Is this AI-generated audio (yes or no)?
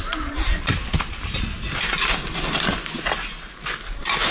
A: no